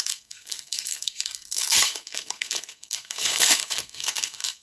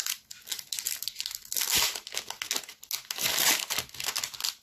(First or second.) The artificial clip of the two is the first